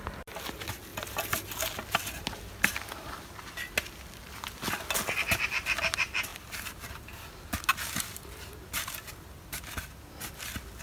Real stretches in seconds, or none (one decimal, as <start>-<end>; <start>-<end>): 0.0-10.8